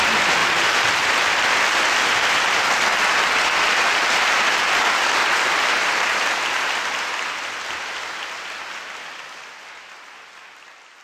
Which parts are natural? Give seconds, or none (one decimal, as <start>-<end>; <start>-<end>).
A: 0.0-11.0